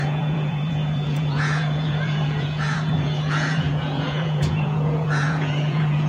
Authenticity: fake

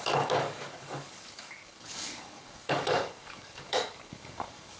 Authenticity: fake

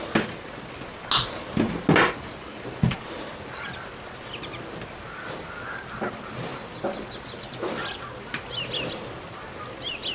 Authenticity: real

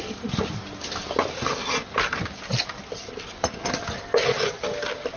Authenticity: real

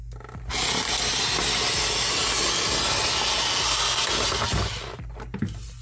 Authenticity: real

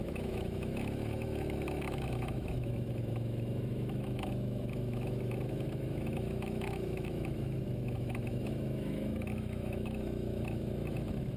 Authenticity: fake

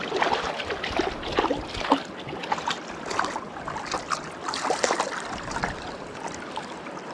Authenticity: real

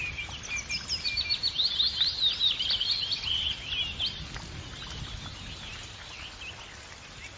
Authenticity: real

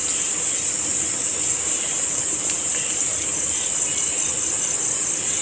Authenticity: real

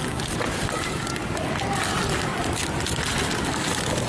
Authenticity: real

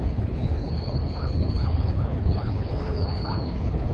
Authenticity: fake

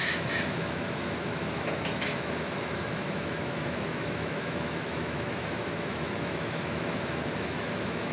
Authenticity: fake